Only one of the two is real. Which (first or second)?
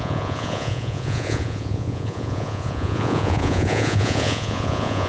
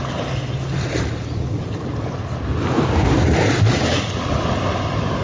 second